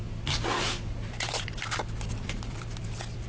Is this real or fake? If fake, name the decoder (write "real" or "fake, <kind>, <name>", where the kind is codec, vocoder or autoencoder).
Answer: real